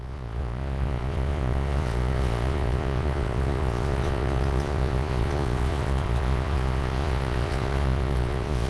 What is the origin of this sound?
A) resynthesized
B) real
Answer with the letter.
A